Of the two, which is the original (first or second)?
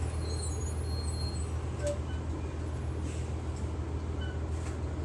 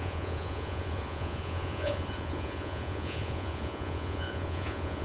first